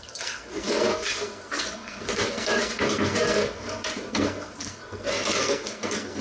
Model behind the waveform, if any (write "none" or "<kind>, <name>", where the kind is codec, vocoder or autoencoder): codec, SNAC